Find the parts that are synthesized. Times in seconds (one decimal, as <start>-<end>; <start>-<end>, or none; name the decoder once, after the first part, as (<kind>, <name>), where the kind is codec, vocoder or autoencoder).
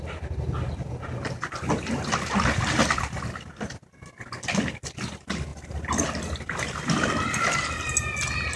none